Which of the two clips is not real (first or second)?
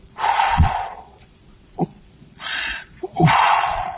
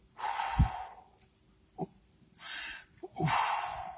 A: first